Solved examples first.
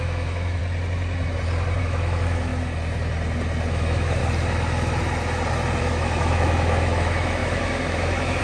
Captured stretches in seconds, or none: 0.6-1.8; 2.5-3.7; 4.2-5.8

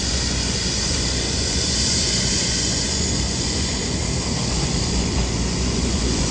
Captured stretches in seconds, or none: 3.8-4.4

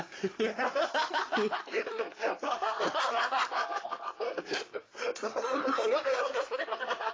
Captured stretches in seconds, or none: 0.9-1.6

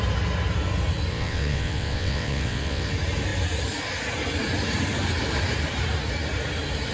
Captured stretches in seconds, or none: 0.0-1.1; 2.9-6.9

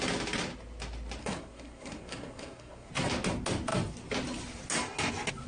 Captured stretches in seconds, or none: 0.0-1.2; 2.9-5.5